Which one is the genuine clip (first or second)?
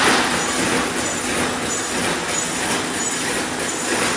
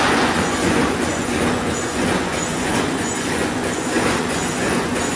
first